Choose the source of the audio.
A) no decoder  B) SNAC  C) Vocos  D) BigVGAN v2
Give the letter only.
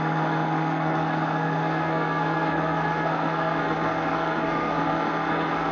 B